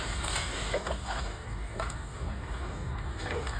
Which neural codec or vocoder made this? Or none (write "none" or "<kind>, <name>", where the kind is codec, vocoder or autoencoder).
codec, DAC